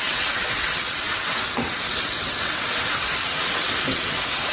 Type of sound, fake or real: fake